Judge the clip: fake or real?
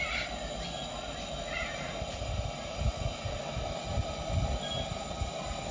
real